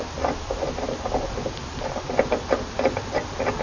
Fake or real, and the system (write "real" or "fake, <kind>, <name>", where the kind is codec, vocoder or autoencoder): real